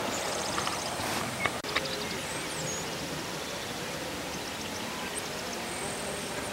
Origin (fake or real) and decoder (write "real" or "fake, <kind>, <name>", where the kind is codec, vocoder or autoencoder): real